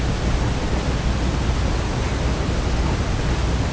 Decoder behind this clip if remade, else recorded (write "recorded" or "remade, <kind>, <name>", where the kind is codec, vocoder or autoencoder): recorded